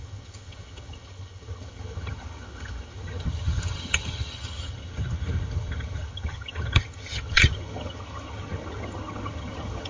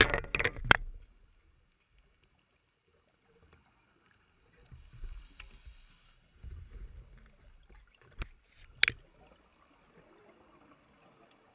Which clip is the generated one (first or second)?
first